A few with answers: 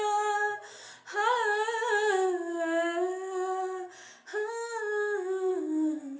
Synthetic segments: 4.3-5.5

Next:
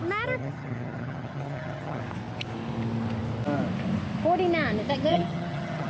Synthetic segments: 0.4-2.0; 5.1-5.9

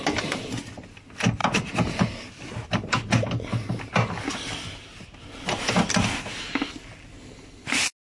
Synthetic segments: none

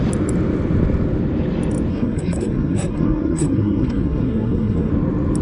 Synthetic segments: 1.9-4.9

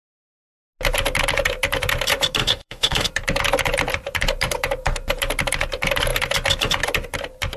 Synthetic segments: 2.4-3.1

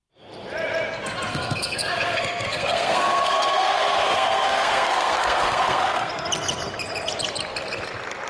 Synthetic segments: 1.3-6.1

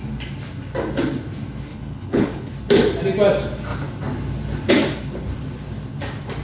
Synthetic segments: 1.7-2.5

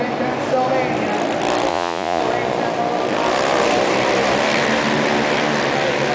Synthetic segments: 1.7-2.2